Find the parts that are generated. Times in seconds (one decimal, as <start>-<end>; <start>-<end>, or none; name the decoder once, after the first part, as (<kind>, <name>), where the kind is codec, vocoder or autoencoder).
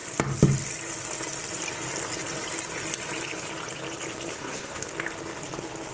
4.3-4.8 (codec, SNAC)